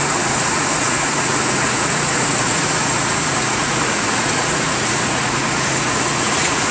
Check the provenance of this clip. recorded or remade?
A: remade